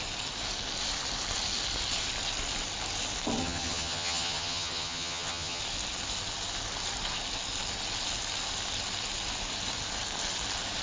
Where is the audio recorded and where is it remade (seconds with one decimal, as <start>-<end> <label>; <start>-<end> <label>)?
0.0-3.4 recorded; 3.4-5.6 remade; 5.6-10.8 recorded